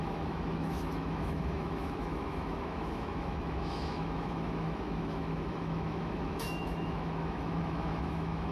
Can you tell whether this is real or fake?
fake